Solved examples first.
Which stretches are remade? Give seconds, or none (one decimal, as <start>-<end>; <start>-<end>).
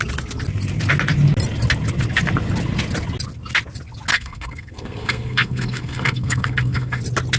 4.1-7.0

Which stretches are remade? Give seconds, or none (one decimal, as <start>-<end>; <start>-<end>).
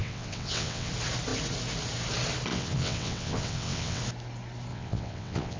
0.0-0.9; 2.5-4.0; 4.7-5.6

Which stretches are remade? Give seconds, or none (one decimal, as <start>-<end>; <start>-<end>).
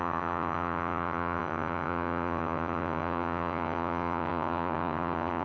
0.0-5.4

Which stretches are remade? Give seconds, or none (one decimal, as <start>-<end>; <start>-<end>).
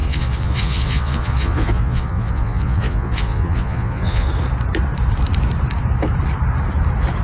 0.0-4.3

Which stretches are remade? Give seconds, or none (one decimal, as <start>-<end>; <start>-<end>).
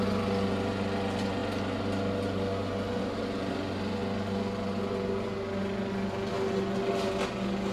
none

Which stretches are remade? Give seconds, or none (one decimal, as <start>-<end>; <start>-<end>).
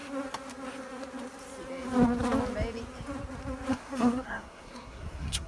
3.7-5.5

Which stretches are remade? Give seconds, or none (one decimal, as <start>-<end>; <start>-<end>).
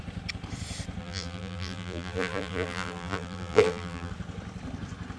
1.0-4.1